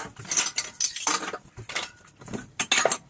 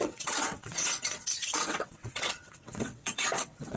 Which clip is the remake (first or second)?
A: second